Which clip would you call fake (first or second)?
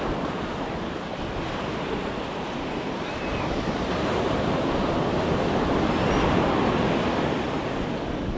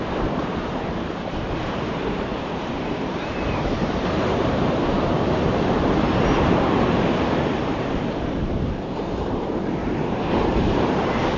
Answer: second